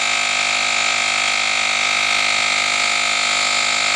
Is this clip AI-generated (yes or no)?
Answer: no